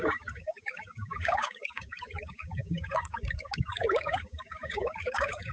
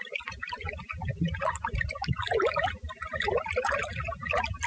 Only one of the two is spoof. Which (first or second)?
first